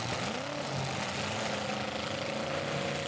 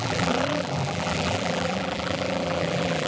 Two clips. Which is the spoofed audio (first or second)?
second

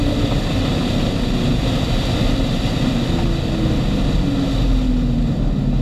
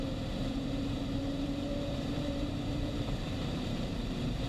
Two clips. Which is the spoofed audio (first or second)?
second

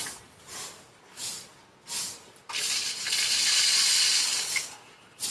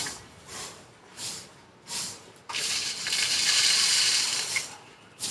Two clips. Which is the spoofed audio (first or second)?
second